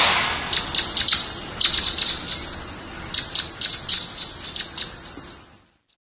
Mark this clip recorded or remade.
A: recorded